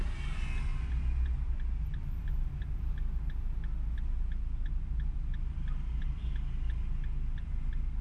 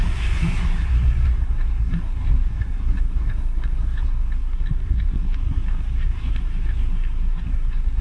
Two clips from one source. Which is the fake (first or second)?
second